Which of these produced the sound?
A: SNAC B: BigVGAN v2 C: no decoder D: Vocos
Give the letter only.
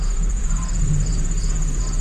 D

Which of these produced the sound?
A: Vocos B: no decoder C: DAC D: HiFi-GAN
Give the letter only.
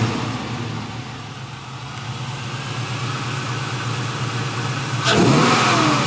B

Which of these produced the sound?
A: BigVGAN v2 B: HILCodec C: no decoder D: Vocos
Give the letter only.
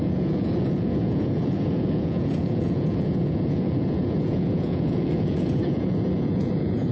D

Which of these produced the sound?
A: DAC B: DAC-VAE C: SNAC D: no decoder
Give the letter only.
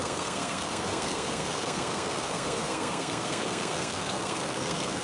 C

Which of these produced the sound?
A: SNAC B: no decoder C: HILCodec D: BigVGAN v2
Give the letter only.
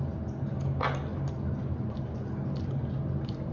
B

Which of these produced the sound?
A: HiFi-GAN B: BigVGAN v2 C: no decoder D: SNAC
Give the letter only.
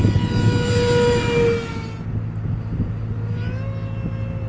C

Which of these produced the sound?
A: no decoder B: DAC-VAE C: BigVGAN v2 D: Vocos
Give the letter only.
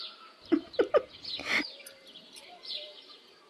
C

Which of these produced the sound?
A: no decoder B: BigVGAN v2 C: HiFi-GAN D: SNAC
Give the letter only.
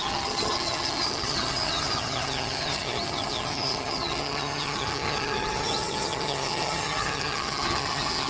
C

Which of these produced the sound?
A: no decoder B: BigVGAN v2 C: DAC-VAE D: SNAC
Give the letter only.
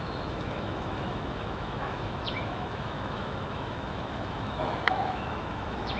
C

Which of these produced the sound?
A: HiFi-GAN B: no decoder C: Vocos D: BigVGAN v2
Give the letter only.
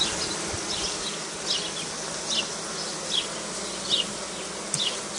B